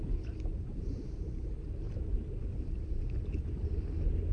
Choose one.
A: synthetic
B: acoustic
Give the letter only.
B